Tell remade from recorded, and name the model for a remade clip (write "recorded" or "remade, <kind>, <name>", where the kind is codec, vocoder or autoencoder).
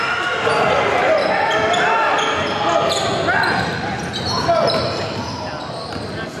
recorded